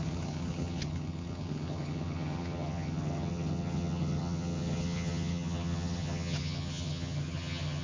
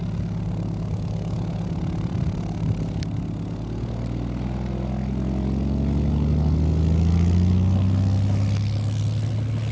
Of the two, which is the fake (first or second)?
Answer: first